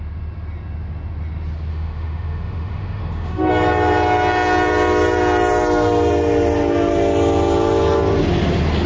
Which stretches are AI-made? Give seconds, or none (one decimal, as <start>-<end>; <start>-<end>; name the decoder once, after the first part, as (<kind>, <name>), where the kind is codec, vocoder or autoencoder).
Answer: 1.7-3.5 (autoencoder, DAC-VAE)

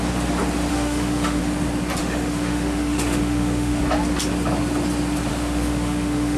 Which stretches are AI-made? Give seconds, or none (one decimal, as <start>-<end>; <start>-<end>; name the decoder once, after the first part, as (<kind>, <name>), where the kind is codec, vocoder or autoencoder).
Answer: 0.7-1.4 (autoencoder, DAC-VAE); 2.0-3.8; 5.3-6.4

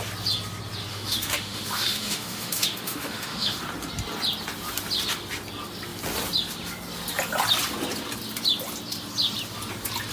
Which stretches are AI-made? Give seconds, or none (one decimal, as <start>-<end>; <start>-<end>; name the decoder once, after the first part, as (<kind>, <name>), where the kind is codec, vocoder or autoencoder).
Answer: 0.9-3.6 (autoencoder, DAC-VAE)